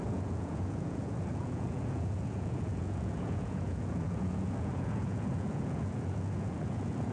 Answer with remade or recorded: remade